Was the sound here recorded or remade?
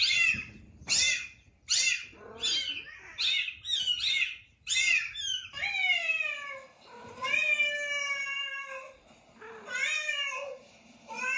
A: recorded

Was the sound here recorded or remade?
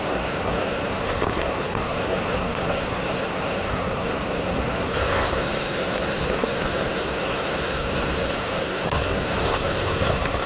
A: remade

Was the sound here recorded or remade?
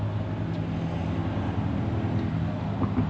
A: recorded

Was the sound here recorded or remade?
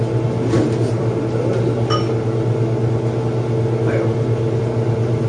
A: recorded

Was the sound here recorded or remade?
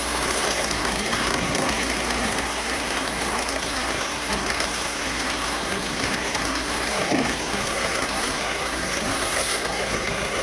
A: remade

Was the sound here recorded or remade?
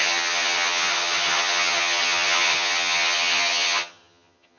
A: remade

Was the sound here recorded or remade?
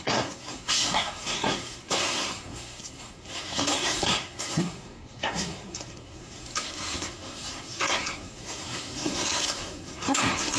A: remade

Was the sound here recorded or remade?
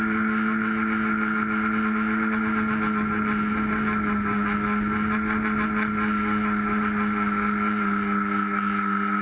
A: recorded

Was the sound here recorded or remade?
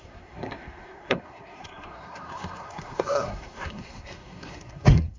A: remade